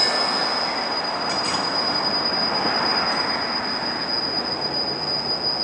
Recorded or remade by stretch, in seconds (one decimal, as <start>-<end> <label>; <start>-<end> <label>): 0.0-5.6 recorded